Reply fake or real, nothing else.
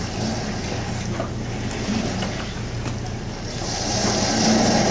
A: real